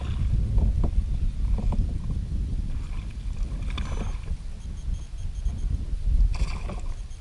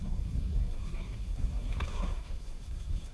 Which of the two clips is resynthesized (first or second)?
second